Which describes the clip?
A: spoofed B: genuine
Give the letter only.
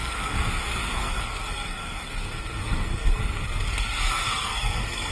A